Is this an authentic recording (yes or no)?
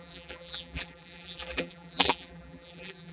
no